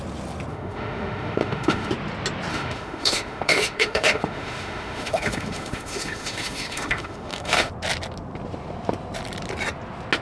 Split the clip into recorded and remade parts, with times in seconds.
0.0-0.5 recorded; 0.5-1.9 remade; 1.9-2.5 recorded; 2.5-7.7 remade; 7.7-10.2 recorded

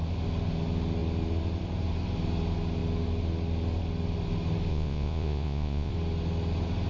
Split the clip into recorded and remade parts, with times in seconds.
0.0-4.7 recorded; 4.7-5.9 remade; 5.9-6.9 recorded

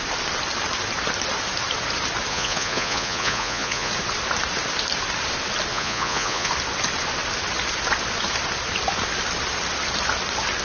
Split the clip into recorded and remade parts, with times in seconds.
0.0-2.3 recorded; 2.3-3.9 remade; 3.9-5.7 recorded; 5.7-6.5 remade; 6.5-10.6 recorded

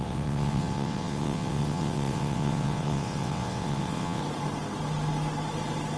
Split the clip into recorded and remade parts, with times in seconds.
0.0-4.2 remade; 4.2-6.0 recorded

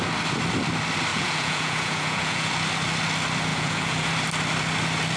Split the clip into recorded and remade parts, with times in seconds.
0.0-1.1 recorded; 1.1-2.5 remade; 2.5-3.5 recorded; 3.5-4.1 remade; 4.1-5.2 recorded

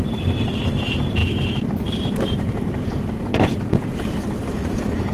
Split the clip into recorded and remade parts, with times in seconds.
0.0-5.1 remade

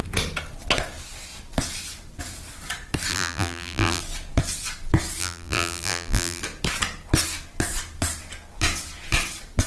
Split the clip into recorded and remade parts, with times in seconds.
0.0-3.1 recorded; 3.1-4.0 remade; 4.0-5.2 recorded; 5.2-6.4 remade; 6.4-9.7 recorded